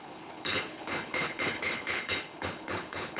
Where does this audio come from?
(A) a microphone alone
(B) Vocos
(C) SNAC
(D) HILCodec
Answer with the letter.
D